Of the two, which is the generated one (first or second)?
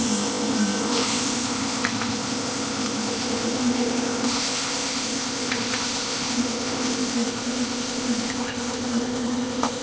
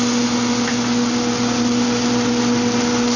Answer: first